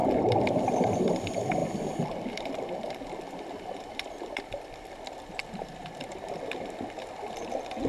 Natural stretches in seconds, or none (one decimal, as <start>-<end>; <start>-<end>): 1.0-1.6; 6.3-7.9